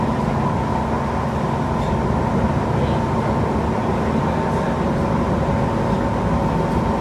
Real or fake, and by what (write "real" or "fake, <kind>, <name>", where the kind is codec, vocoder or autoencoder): real